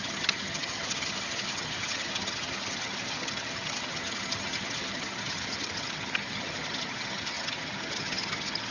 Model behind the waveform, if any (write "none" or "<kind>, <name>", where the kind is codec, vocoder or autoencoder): vocoder, HiFi-GAN